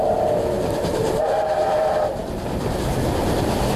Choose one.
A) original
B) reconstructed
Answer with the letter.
B